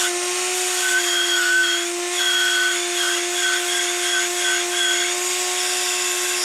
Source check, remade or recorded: recorded